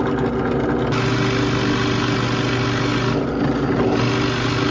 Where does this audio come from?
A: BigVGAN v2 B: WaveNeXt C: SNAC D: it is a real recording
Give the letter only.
D